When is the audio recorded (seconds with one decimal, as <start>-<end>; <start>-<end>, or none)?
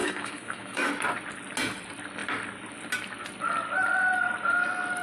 0.9-5.0